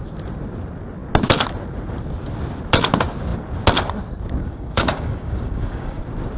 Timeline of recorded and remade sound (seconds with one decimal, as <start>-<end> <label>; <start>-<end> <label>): 0.0-4.4 recorded; 4.4-6.0 remade; 6.0-6.4 recorded